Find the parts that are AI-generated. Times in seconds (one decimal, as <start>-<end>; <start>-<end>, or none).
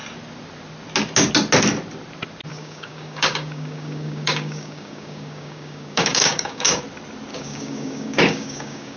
2.5-6.8; 7.3-9.0